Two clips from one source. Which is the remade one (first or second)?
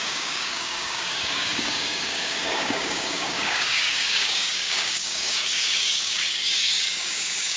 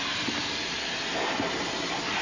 first